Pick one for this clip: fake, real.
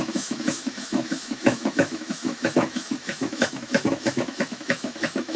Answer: fake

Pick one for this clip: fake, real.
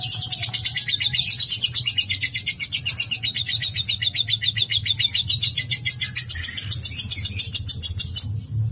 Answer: real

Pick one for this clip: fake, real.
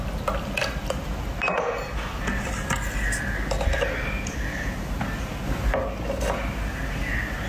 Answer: real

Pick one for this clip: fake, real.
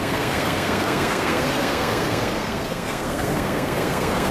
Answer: fake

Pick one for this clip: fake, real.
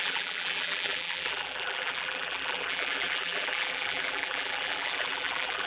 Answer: fake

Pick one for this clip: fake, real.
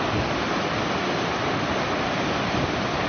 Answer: real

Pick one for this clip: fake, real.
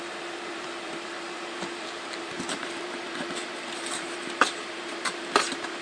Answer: fake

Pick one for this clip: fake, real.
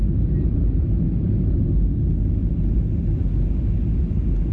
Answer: real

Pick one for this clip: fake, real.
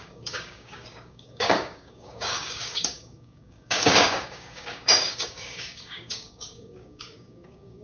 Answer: fake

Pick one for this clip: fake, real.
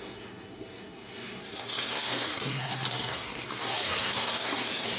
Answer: fake